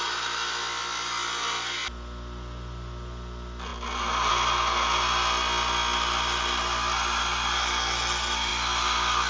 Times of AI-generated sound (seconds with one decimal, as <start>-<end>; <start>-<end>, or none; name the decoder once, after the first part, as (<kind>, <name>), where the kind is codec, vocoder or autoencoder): none